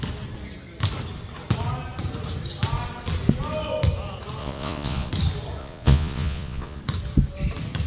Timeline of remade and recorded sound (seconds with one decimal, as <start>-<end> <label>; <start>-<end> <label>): 0.0-4.4 recorded; 4.4-5.1 remade; 5.1-5.6 recorded; 5.6-6.8 remade; 6.8-7.9 recorded